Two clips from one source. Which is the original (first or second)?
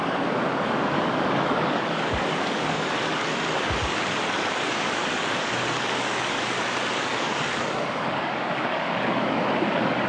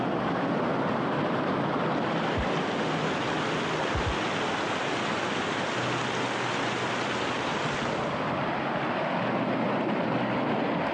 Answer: second